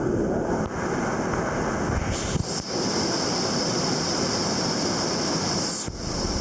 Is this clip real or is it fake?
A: real